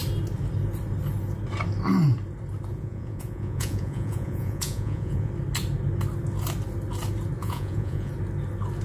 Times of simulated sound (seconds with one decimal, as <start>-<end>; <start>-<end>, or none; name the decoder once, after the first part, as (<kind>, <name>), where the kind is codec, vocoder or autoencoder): 2.7-5.3 (vocoder, Vocos); 7.4-8.1